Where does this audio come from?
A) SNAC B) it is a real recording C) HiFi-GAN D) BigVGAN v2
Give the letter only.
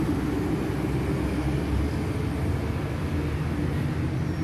B